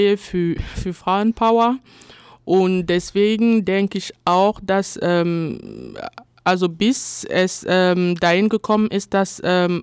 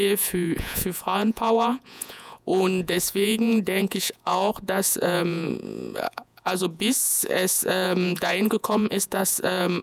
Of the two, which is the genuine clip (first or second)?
first